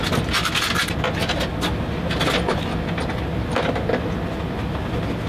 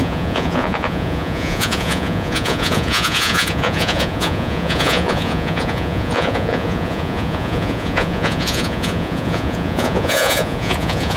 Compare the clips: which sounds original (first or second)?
first